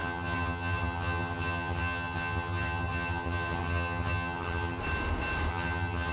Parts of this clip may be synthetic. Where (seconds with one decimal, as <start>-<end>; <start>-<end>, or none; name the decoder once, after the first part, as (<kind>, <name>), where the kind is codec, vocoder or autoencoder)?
0.0-4.8 (vocoder, HiFi-GAN); 5.5-6.1